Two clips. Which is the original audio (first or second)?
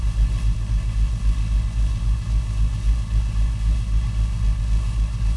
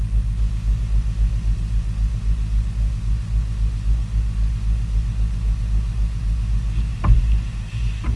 second